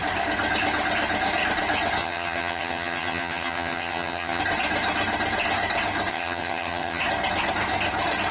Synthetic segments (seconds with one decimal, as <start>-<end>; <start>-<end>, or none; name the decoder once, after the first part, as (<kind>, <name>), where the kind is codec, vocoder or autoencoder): 2.0-4.4 (vocoder, HiFi-GAN); 6.1-7.0